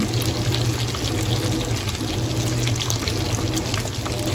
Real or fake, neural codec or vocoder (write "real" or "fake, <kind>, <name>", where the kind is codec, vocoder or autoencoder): real